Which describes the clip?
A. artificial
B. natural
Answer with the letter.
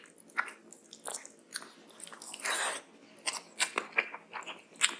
B